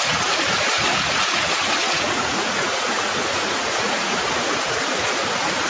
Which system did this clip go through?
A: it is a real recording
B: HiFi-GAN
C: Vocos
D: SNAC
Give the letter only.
C